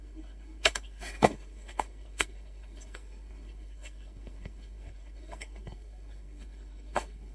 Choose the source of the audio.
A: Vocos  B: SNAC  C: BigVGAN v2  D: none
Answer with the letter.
B